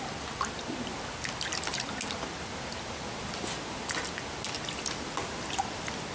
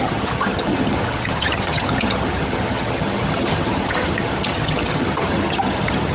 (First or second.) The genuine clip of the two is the first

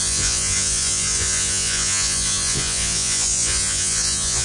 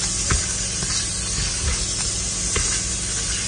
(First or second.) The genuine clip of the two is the second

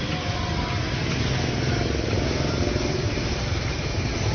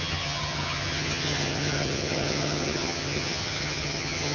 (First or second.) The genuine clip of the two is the first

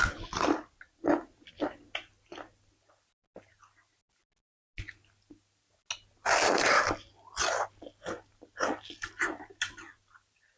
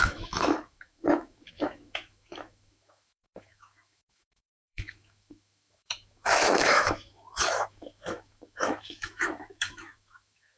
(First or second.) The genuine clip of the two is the first